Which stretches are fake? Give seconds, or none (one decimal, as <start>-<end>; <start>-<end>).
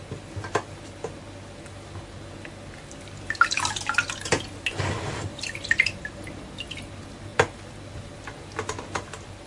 5.3-6.0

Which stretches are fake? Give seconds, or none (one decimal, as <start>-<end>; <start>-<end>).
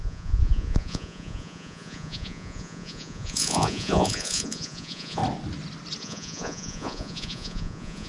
0.0-5.2; 6.0-8.1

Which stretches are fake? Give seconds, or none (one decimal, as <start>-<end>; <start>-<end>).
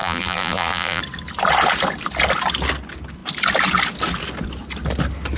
0.0-1.0